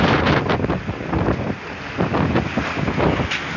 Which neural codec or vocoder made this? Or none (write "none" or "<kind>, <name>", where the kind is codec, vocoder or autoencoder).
none